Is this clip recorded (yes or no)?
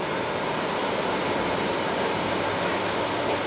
yes